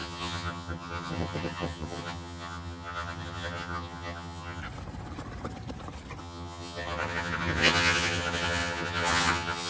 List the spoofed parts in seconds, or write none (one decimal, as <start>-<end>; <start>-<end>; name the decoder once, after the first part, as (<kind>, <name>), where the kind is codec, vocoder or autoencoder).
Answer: 0.0-4.6 (vocoder, HiFi-GAN); 6.2-9.7

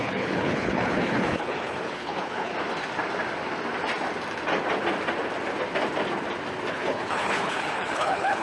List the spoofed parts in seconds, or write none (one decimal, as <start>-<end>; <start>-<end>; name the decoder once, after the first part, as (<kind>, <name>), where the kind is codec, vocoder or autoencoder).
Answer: 0.0-2.5 (codec, HILCodec); 6.7-8.4

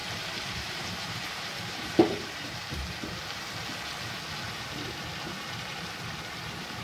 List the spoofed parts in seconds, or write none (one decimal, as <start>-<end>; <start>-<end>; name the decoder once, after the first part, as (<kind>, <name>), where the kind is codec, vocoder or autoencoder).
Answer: 0.0-3.2 (vocoder, BigVGAN v2)